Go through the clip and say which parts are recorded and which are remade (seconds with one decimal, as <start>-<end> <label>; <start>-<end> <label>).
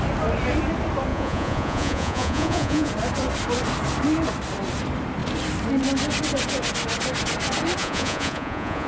0.0-1.1 recorded; 1.1-2.9 remade; 2.9-7.8 recorded; 7.8-8.9 remade